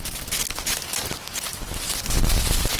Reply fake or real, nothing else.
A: real